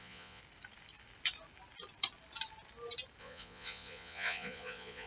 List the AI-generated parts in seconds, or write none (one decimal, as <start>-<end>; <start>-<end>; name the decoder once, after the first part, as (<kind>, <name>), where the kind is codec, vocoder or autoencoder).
0.0-0.4 (vocoder, Vocos); 3.2-5.1